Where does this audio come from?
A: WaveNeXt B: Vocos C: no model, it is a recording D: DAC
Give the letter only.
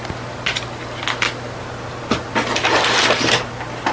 C